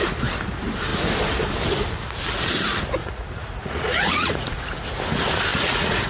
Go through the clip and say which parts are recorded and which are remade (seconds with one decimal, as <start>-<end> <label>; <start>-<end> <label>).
0.0-3.0 recorded; 3.0-4.6 remade; 4.6-5.5 recorded; 5.5-6.1 remade